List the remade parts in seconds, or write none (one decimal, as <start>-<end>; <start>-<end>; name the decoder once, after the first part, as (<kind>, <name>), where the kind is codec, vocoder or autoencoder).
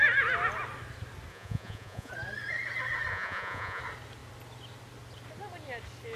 1.3-2.1 (vocoder, Vocos); 3.1-3.8